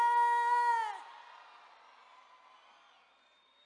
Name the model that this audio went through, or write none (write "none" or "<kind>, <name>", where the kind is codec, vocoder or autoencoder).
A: none